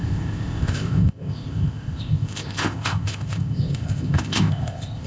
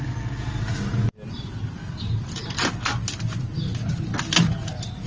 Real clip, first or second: second